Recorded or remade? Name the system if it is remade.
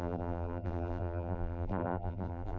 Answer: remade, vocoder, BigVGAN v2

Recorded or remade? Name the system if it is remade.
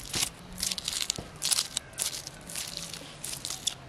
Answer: recorded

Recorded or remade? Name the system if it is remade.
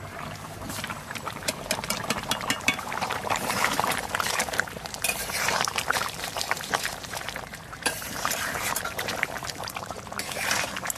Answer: remade, vocoder, BigVGAN v2